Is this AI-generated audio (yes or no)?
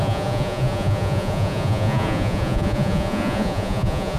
yes